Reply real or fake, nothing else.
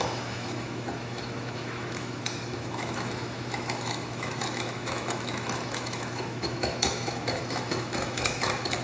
fake